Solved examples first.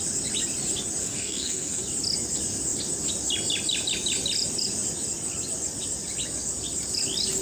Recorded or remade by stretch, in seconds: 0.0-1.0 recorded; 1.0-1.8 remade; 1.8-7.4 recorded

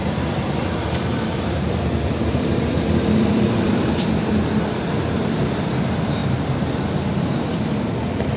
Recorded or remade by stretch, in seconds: 0.0-6.2 remade; 6.2-7.5 recorded; 7.5-8.4 remade

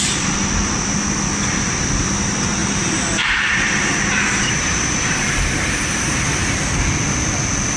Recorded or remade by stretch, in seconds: 0.0-2.6 recorded; 2.6-6.6 remade; 6.6-7.8 recorded

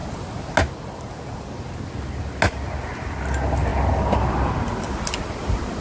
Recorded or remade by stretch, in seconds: 0.0-5.8 recorded